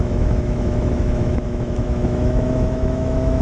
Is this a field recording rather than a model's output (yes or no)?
no